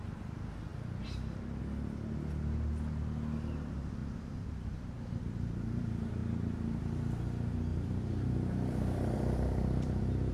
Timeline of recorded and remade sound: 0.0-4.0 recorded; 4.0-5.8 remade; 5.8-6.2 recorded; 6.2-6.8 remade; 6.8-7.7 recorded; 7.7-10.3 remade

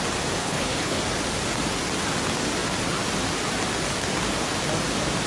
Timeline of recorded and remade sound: 0.0-0.4 recorded; 0.4-1.0 remade; 1.0-5.3 recorded

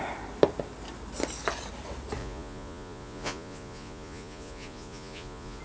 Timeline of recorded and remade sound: 0.0-2.2 recorded; 2.2-5.6 remade

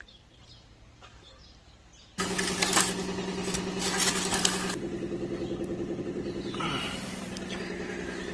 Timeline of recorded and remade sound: 0.0-1.9 remade; 1.9-6.0 recorded; 6.0-8.3 remade

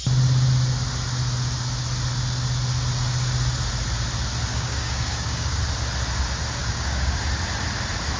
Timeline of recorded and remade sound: 0.0-4.5 recorded; 4.5-5.6 remade; 5.6-6.6 recorded; 6.6-7.2 remade; 7.2-8.2 recorded

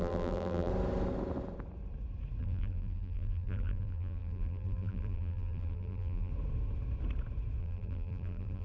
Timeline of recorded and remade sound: 0.0-0.7 remade; 0.7-2.4 recorded; 2.4-6.3 remade; 6.3-7.6 recorded; 7.6-8.6 remade